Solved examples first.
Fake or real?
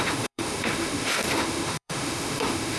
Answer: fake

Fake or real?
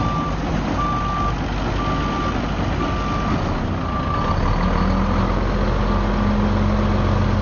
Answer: real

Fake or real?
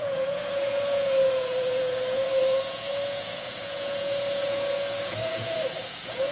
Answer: fake